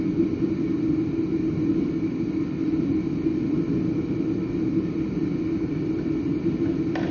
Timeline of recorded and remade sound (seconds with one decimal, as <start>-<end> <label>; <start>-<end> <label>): 0.0-2.6 recorded; 2.6-3.1 remade; 3.1-7.1 recorded